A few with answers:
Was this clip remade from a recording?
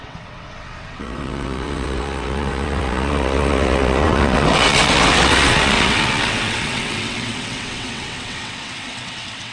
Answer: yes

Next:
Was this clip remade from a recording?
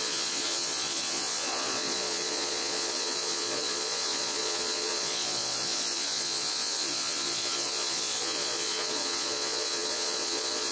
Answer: yes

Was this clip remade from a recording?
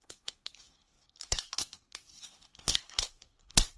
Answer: yes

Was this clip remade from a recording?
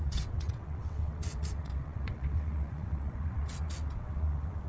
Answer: yes